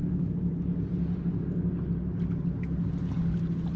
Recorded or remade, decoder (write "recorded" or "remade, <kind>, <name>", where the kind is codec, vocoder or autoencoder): recorded